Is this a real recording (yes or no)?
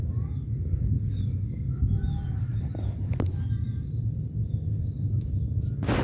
yes